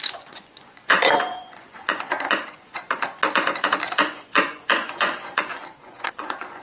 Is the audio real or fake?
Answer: fake